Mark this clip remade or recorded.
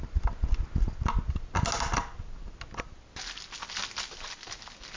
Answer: recorded